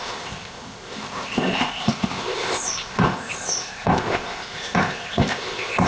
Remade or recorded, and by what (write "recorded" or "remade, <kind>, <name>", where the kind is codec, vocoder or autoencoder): remade, codec, ZipCodec